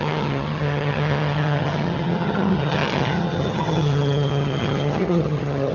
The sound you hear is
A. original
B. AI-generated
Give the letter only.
B